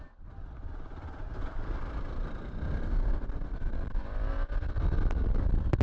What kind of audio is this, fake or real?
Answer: real